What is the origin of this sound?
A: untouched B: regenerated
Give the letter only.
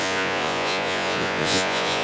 B